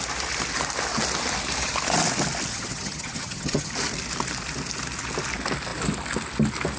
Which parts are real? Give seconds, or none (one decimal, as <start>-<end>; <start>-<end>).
0.0-2.5; 3.7-6.8